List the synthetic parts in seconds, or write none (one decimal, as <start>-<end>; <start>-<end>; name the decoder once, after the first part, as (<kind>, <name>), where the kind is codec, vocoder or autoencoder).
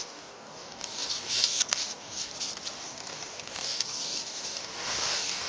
0.0-2.3 (codec, DAC); 2.8-5.5